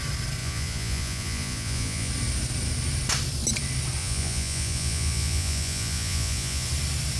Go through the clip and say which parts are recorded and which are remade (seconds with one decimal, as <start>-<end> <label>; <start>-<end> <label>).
0.0-0.4 recorded; 0.4-2.1 remade; 2.1-4.0 recorded; 4.0-6.7 remade; 6.7-7.2 recorded